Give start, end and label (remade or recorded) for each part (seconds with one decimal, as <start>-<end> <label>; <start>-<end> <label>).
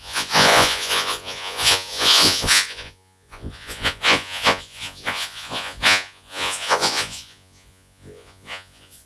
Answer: 0.0-9.1 remade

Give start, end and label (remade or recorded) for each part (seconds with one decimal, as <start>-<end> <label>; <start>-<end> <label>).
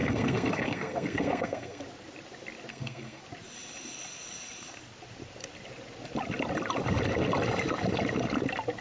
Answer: 0.0-1.8 remade; 1.8-2.7 recorded; 2.7-3.2 remade; 3.2-8.8 recorded